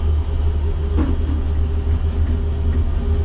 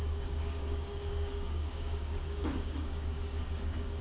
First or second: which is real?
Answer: first